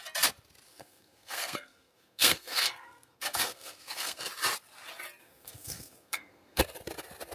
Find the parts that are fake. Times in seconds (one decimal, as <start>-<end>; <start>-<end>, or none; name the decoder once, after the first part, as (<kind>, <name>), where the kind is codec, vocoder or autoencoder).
0.7-4.3 (codec, SNAC); 5.2-6.6